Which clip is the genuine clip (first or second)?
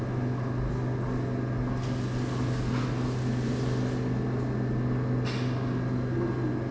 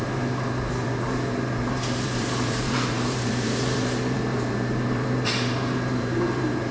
first